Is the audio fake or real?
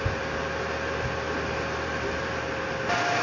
real